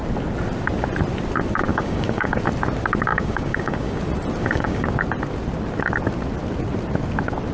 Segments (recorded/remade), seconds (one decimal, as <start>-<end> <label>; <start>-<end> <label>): 0.0-1.7 recorded; 1.7-2.4 remade; 2.4-3.1 recorded; 3.1-4.0 remade; 4.0-4.4 recorded; 4.4-5.0 remade; 5.0-7.5 recorded